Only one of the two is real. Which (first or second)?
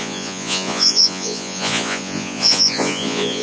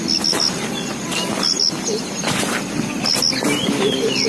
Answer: second